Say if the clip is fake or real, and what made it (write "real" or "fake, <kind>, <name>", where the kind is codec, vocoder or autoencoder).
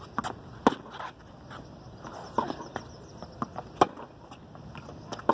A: real